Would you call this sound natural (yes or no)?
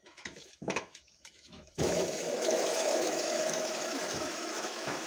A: no